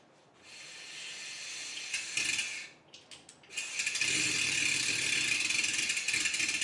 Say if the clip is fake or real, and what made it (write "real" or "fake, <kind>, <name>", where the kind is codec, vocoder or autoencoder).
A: real